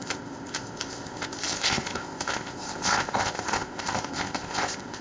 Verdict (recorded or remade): remade